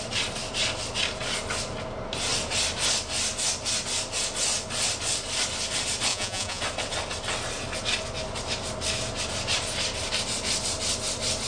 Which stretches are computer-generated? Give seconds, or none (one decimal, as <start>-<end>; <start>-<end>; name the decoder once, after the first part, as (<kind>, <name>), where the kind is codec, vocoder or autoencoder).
6.1-6.6 (vocoder, Vocos)